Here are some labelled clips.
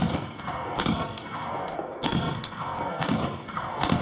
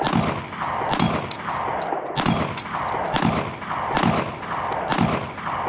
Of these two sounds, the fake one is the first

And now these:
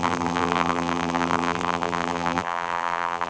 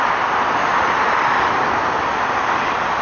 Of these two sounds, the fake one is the first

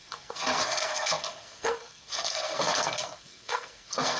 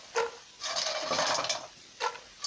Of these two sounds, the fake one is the first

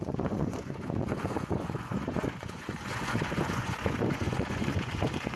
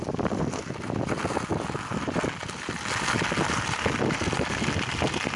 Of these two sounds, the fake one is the first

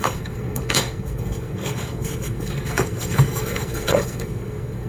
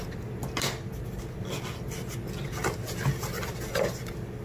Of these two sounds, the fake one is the first